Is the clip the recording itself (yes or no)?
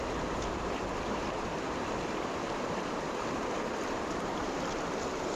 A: no